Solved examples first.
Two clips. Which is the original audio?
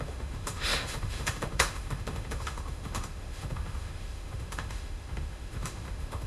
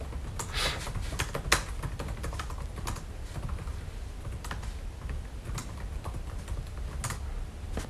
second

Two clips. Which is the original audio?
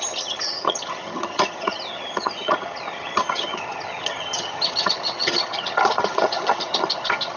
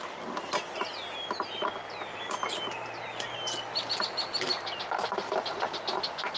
second